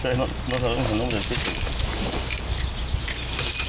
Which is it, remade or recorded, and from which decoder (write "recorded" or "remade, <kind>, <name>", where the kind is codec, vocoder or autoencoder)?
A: recorded